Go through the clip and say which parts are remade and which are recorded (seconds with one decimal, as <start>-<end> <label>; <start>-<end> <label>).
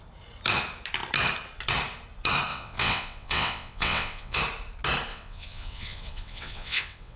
0.0-2.5 recorded; 2.5-4.4 remade; 4.4-5.1 recorded; 5.1-7.2 remade